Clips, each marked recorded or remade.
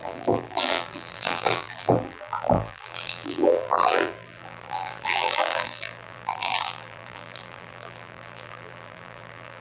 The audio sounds remade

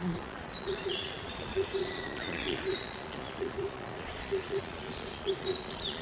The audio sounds remade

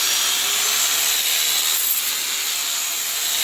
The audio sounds recorded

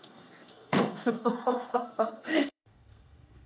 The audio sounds remade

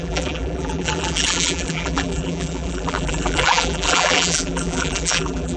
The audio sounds remade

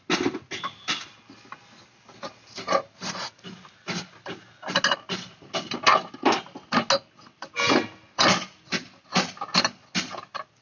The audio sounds recorded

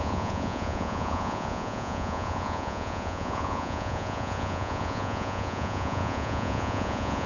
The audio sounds remade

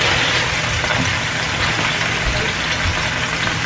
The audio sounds recorded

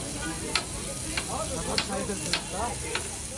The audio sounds recorded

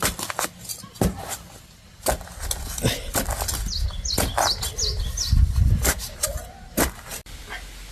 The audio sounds recorded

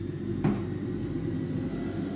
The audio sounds recorded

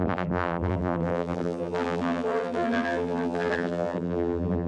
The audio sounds remade